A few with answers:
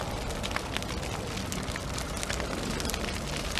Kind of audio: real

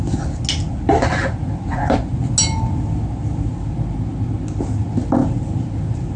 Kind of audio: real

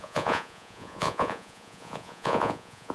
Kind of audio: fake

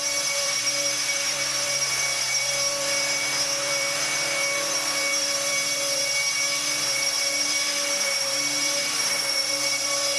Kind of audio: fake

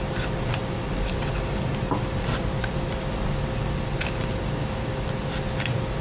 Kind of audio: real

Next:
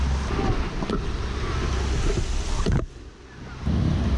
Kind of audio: real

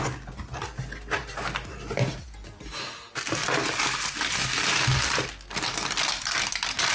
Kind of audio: real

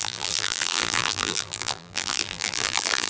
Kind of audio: fake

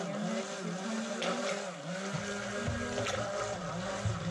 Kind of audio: real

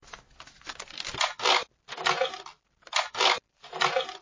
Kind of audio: real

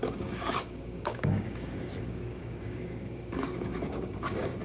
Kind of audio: fake